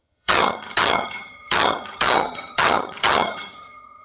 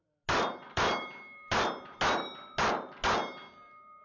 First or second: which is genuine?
second